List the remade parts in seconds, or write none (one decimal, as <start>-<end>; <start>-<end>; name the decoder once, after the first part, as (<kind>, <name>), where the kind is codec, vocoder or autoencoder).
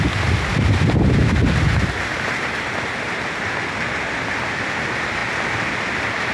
none